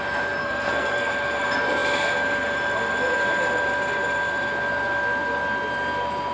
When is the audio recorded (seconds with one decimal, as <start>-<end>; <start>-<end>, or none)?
0.0-0.4; 1.1-6.3